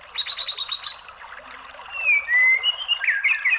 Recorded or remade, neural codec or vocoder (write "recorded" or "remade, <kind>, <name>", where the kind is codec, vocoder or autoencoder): recorded